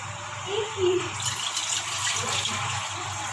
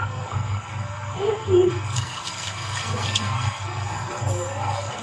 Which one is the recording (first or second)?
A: first